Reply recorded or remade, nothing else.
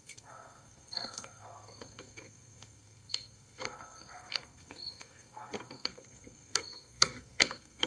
remade